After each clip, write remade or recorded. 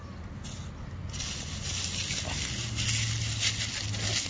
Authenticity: recorded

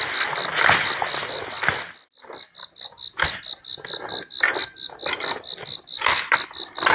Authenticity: recorded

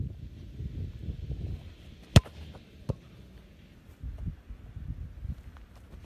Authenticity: recorded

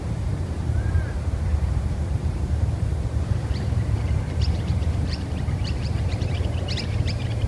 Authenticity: remade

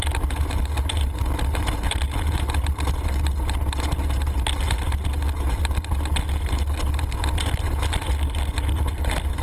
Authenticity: recorded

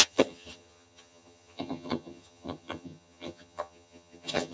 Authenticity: remade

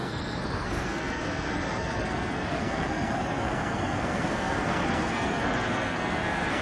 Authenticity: remade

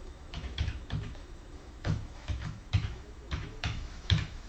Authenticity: remade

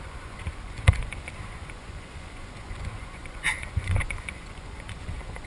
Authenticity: remade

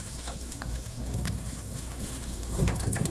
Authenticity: remade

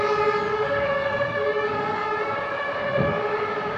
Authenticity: remade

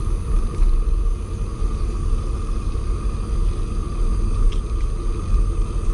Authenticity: recorded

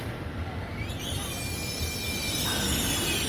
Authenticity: recorded